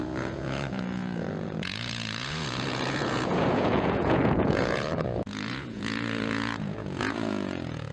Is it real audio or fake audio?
fake